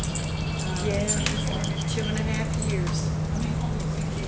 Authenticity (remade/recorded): recorded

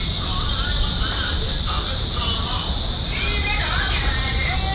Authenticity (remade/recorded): recorded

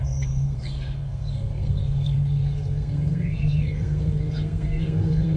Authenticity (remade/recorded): remade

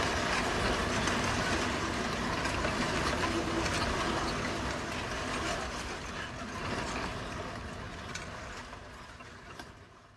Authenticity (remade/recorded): recorded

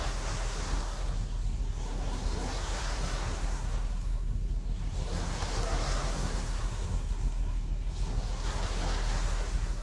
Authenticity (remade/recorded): remade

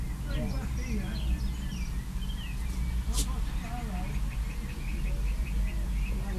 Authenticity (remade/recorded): recorded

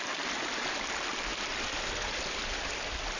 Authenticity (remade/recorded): recorded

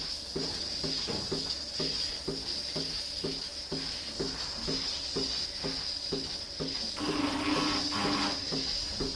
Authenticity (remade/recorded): recorded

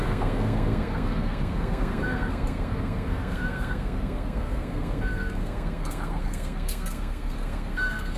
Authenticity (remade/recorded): remade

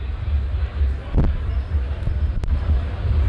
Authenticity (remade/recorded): recorded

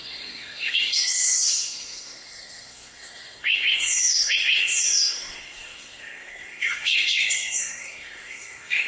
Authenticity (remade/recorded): remade